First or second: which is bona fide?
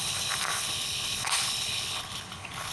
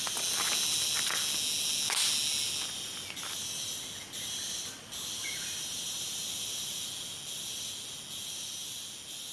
second